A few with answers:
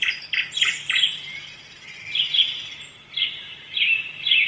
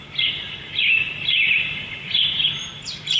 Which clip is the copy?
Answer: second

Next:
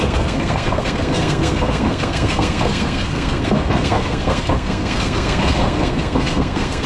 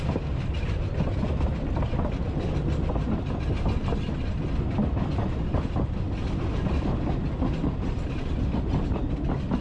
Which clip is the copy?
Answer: first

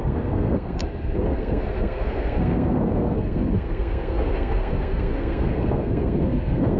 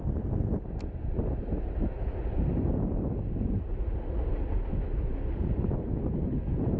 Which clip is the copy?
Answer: first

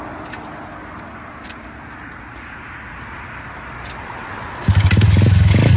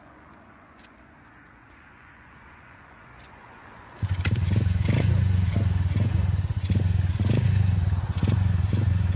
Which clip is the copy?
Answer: second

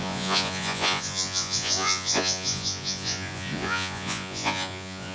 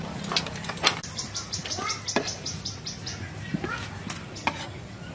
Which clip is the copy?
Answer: first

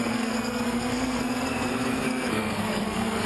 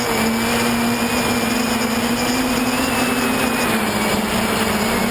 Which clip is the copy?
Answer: first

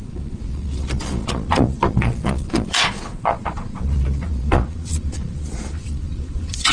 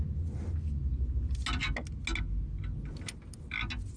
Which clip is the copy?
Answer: first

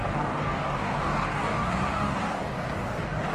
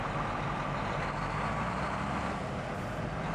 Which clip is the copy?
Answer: first